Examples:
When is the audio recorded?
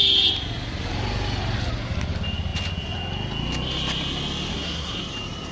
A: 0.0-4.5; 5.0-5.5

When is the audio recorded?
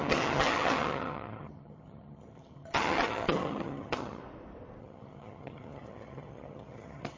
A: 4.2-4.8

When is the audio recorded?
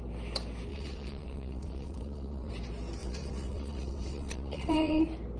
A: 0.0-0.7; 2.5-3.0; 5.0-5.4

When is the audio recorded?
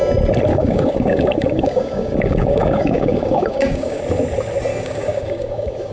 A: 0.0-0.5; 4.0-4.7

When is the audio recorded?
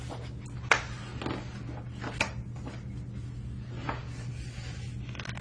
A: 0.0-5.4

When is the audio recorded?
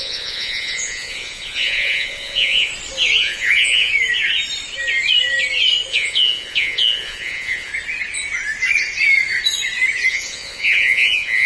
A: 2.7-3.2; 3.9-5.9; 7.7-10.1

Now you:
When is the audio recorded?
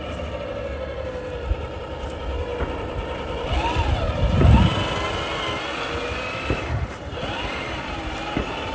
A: 0.0-7.1; 8.0-8.7